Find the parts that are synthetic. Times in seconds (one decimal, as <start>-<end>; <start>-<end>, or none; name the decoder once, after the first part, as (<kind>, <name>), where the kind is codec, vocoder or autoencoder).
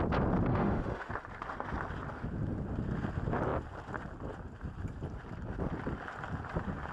0.5-1.1 (autoencoder, DAC-VAE)